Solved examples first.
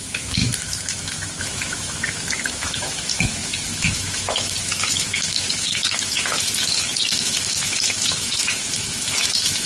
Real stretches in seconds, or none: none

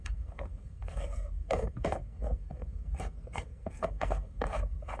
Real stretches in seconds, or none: none

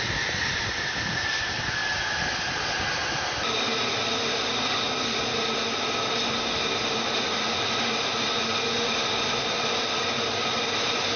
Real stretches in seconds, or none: 0.0-11.2

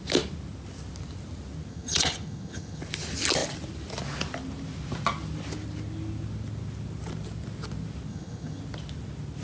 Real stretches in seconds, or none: 0.0-1.7; 2.8-8.1; 8.6-9.4

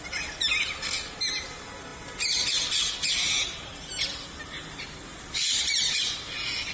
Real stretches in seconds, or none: 0.0-5.1; 6.0-6.7

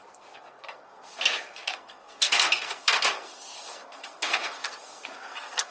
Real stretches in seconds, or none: none